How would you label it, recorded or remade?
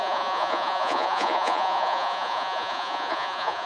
remade